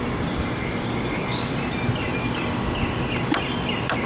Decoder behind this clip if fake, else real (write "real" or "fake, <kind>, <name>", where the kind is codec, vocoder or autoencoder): real